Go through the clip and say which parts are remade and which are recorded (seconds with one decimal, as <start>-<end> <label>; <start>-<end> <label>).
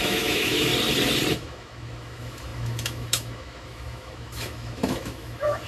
0.0-0.7 remade; 0.7-1.3 recorded; 1.3-5.7 remade